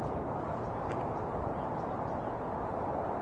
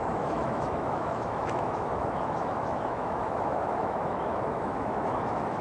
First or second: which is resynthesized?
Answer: second